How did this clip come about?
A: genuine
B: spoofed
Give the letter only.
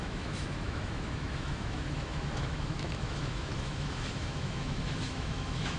B